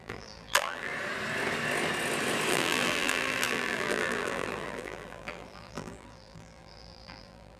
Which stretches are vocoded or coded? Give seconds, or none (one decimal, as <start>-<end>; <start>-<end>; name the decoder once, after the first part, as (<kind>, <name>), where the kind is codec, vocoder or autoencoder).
0.0-0.9 (vocoder, BigVGAN v2); 2.5-7.6